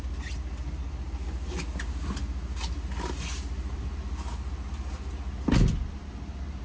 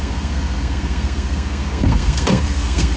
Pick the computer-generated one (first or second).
second